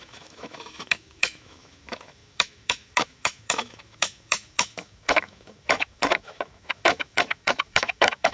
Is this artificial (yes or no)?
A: yes